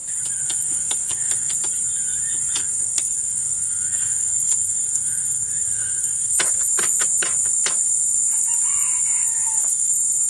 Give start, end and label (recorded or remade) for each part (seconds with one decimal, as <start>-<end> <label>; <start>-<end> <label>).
0.0-0.4 recorded; 0.4-1.6 remade; 1.6-2.6 recorded; 2.6-6.7 remade; 6.7-9.3 recorded; 9.3-9.9 remade; 9.9-10.3 recorded